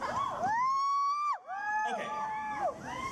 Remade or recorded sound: recorded